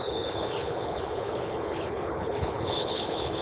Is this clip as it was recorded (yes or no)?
no